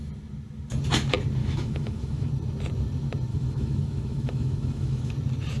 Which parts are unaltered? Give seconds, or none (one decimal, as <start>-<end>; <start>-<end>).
0.0-1.4; 2.3-3.3; 5.1-5.6